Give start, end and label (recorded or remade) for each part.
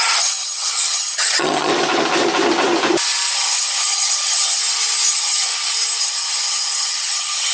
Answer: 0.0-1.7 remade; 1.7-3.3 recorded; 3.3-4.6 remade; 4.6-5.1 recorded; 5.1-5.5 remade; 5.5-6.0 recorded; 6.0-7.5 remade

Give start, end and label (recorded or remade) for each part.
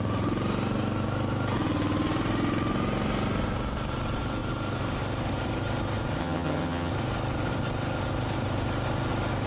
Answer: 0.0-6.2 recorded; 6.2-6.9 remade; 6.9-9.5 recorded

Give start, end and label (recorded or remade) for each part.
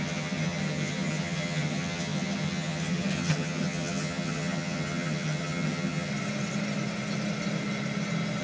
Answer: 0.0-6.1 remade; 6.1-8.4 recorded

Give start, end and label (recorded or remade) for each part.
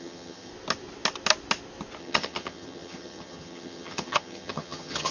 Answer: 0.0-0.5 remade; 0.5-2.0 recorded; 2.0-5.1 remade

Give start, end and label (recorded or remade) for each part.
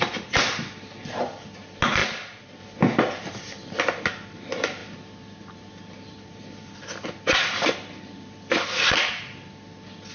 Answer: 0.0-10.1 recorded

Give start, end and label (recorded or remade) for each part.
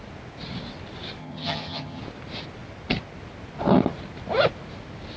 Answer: 0.0-1.2 recorded; 1.2-2.0 remade; 2.0-5.2 recorded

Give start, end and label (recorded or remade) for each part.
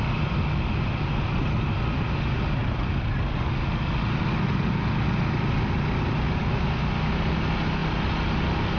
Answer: 0.0-8.8 recorded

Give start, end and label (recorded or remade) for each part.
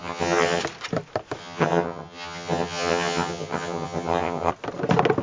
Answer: 0.0-0.6 remade; 0.6-1.4 recorded; 1.4-4.5 remade; 4.5-5.2 recorded